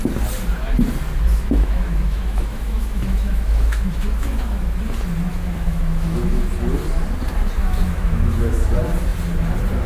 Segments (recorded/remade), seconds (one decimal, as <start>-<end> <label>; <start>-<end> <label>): 0.0-1.3 recorded; 1.3-4.8 remade; 4.8-5.3 recorded; 5.3-6.5 remade; 6.5-7.6 recorded; 7.6-8.7 remade; 8.7-9.9 recorded

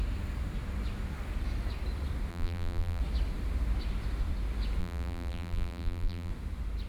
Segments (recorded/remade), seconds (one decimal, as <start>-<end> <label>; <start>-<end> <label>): 0.0-2.3 recorded; 2.3-3.0 remade; 3.0-4.8 recorded; 4.8-6.3 remade; 6.3-6.9 recorded

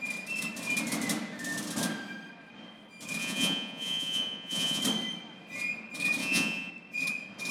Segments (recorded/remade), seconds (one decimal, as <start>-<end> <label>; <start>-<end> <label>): 0.0-3.2 recorded; 3.2-4.8 remade; 4.8-6.2 recorded; 6.2-6.7 remade; 6.7-7.5 recorded

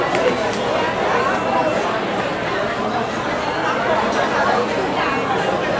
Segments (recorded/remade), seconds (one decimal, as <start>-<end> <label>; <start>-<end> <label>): 0.0-5.8 recorded